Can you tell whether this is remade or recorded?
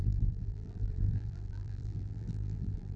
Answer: remade